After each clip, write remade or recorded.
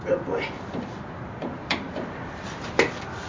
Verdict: recorded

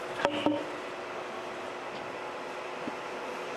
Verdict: recorded